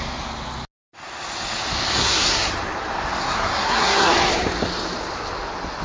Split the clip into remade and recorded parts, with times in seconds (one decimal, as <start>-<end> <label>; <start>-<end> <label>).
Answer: 0.0-2.0 recorded; 2.0-2.5 remade; 2.5-3.2 recorded; 3.2-4.1 remade; 4.1-5.8 recorded